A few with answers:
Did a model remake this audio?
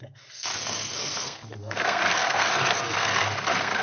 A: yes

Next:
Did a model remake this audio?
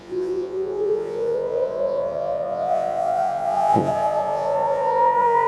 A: yes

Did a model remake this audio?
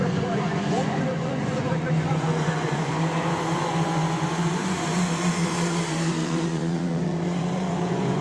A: yes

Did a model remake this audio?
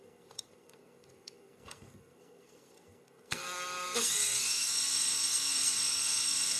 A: yes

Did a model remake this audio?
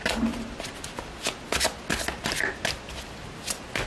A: no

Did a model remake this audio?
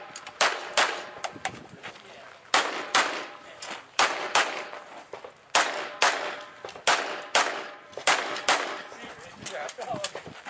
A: no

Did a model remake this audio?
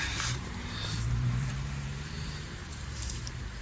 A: yes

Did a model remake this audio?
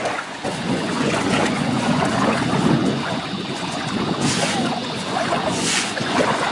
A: yes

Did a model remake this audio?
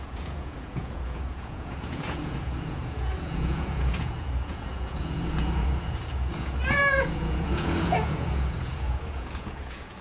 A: yes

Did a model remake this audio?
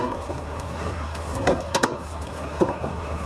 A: yes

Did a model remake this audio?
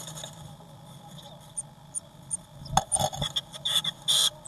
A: no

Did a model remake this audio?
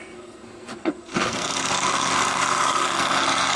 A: yes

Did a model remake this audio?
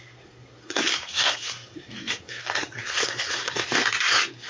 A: yes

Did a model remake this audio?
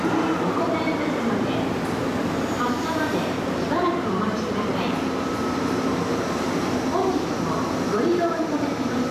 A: yes